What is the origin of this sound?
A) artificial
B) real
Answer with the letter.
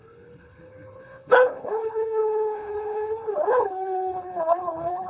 A